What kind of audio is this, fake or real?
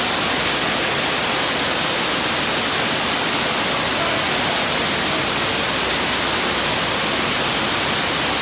real